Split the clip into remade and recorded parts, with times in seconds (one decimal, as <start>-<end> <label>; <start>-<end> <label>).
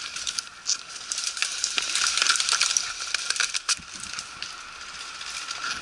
0.0-5.8 recorded